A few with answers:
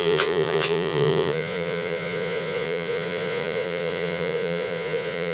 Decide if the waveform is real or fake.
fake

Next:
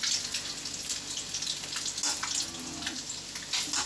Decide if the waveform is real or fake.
real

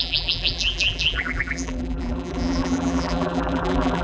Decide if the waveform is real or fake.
fake